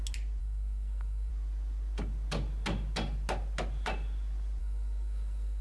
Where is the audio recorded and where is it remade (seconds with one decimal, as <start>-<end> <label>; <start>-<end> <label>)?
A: 0.0-0.4 recorded; 0.4-1.3 remade; 1.3-4.6 recorded; 4.6-5.6 remade